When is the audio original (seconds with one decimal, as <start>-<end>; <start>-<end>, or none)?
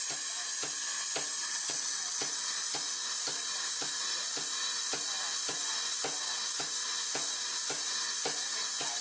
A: 0.0-1.4; 2.2-9.0